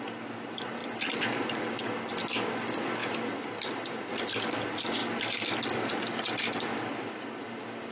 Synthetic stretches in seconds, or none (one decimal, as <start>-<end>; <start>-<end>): 0.8-1.8; 3.0-4.6; 5.0-6.0; 6.7-7.4